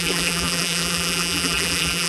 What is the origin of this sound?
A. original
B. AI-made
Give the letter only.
B